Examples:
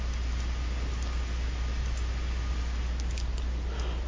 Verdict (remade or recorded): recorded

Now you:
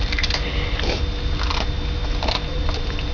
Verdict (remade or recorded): recorded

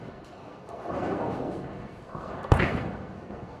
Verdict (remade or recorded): remade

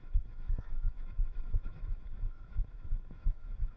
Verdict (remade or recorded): remade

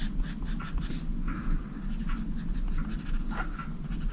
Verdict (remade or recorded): recorded